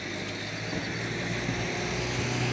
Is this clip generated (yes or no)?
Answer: no